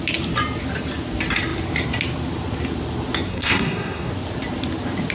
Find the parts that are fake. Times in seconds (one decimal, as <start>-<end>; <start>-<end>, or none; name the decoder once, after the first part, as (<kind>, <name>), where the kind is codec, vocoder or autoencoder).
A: 3.3-4.1 (codec, SNAC)